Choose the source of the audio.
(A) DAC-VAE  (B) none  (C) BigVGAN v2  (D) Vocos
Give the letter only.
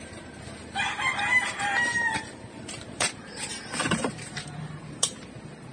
C